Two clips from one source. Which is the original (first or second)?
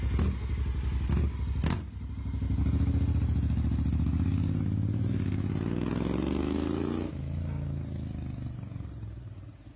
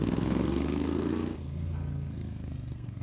first